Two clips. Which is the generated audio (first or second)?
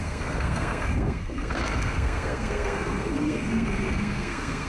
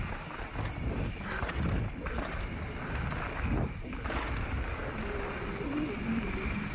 first